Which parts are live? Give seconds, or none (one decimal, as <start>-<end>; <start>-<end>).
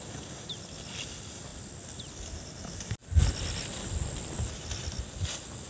0.0-5.7